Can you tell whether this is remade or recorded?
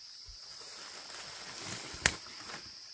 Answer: recorded